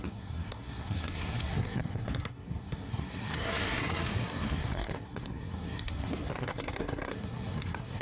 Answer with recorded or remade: remade